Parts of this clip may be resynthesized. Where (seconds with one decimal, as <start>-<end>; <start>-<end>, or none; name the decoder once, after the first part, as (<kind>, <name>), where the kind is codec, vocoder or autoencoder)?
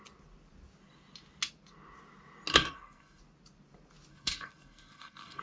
2.5-3.2 (codec, SNAC); 4.1-5.4